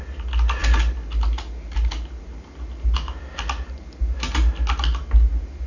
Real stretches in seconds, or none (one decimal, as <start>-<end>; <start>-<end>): 0.0-5.7